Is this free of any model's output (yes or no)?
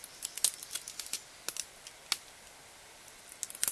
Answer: yes